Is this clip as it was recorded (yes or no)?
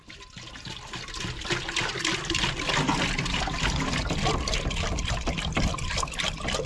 yes